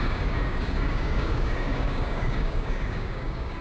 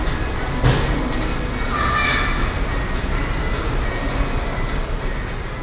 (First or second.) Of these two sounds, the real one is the second